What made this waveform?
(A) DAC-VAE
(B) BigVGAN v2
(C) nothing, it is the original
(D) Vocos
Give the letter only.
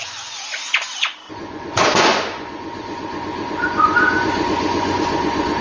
D